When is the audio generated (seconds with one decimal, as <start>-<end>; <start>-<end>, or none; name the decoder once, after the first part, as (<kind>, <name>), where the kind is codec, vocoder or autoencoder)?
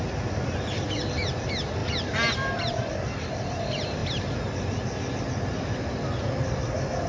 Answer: 1.8-3.6 (vocoder, BigVGAN v2)